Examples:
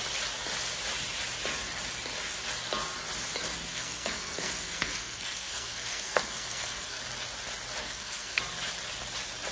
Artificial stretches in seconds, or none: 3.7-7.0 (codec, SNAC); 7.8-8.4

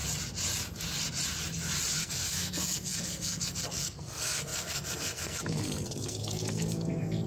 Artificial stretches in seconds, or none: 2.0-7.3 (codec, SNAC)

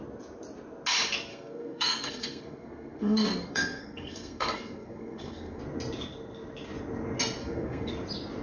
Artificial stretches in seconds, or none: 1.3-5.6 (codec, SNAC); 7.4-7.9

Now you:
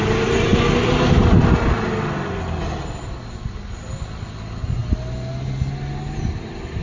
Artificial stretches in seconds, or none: none